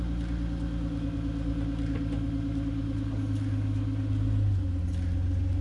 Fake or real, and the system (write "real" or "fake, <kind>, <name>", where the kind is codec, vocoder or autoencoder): real